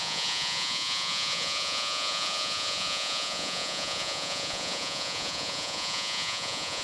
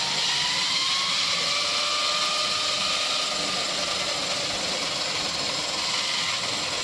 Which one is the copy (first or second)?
first